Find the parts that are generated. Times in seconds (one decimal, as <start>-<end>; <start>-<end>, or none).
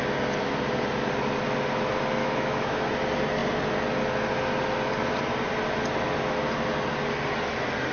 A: 2.2-2.9